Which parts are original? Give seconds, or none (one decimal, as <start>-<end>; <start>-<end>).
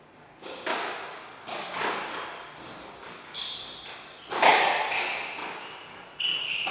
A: 0.0-6.7